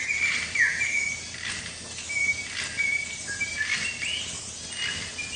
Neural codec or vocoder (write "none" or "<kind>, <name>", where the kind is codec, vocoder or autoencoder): none